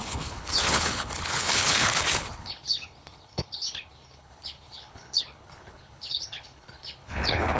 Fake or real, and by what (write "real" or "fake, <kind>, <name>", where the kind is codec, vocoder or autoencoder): fake, codec, HILCodec